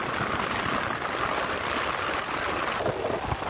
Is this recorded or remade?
recorded